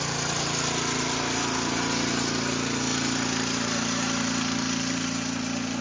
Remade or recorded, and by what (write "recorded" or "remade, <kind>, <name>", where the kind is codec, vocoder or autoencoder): recorded